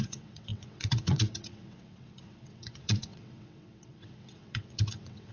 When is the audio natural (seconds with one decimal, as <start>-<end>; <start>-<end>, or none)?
none